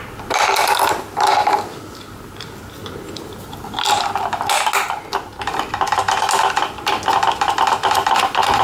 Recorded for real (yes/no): yes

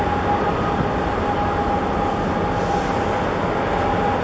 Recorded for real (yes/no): yes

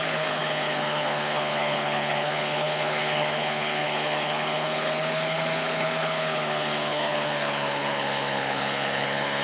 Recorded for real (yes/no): no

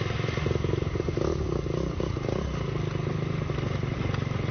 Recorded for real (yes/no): yes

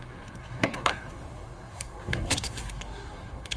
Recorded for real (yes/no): no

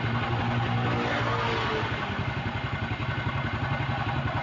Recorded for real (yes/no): yes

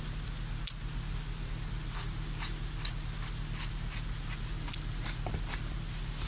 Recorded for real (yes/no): yes